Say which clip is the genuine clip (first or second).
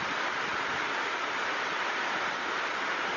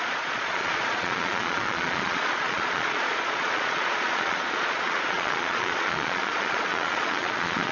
first